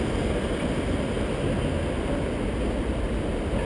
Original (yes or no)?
yes